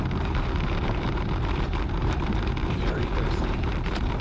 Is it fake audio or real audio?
fake